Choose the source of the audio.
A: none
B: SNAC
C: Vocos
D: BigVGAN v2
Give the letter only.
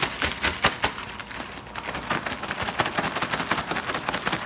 D